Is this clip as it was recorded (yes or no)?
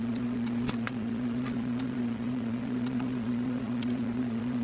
no